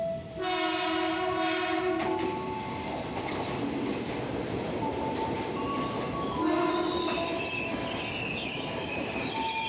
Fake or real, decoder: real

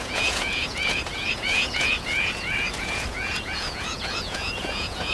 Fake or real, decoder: fake, vocoder, Vocos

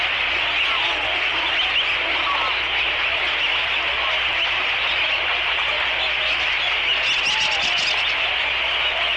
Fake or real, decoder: real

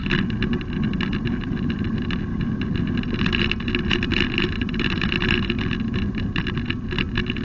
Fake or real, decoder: real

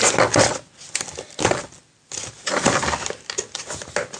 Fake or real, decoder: real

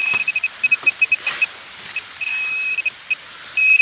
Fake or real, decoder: fake, vocoder, BigVGAN v2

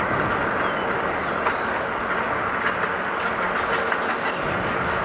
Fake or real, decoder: real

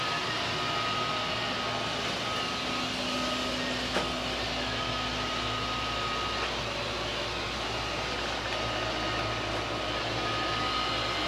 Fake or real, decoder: real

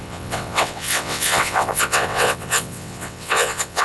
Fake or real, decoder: fake, vocoder, WaveNeXt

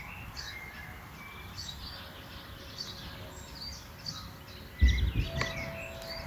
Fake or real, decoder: real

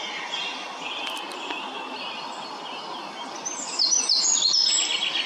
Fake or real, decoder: real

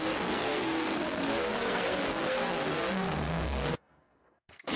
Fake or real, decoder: fake, codec, SNAC